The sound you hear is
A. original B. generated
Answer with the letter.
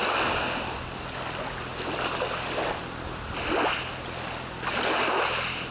A